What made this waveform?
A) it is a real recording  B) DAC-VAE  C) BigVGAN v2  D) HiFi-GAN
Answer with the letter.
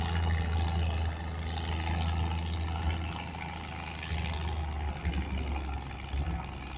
A